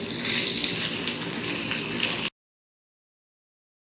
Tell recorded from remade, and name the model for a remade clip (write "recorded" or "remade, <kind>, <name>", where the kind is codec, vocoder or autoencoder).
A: recorded